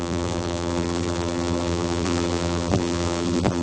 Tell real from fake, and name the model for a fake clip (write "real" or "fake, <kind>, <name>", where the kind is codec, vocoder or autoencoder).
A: fake, vocoder, BigVGAN v2